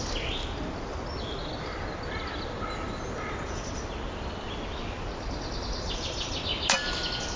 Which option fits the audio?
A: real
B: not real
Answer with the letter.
A